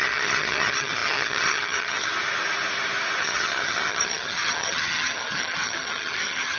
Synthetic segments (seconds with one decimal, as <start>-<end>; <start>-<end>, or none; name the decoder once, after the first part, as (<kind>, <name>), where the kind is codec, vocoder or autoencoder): 0.0-2.1 (vocoder, HiFi-GAN); 3.2-6.6